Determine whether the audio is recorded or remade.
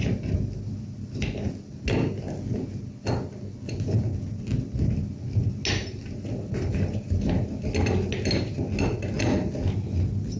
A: recorded